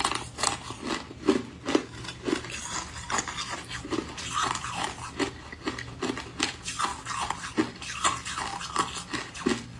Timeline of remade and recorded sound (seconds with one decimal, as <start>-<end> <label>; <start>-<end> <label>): 0.0-9.8 recorded

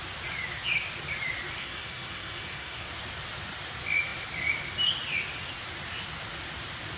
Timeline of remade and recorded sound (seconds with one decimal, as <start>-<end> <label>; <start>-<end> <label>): 0.0-1.6 recorded; 1.6-2.9 remade; 2.9-7.0 recorded

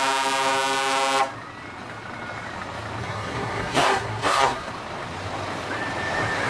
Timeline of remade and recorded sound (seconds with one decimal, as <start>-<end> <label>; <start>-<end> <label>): 0.0-3.0 recorded; 3.0-4.7 remade; 4.7-6.5 recorded

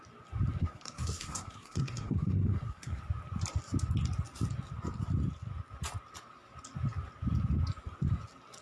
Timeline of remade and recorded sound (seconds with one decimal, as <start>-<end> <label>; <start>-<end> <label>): 0.0-0.6 recorded; 0.6-3.0 remade; 3.0-8.6 recorded